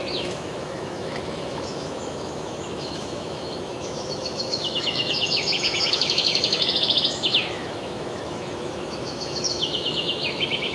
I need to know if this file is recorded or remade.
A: remade